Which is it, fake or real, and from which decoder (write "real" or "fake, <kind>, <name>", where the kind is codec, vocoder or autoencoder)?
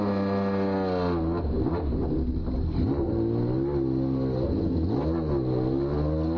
real